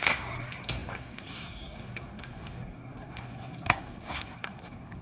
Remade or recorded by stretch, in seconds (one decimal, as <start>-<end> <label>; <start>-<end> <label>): 0.0-5.0 remade